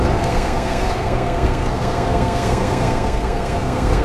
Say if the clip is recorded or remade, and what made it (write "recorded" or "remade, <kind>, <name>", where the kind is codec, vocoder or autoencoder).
remade, codec, SNAC